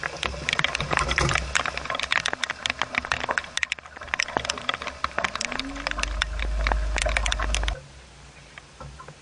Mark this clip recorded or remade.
recorded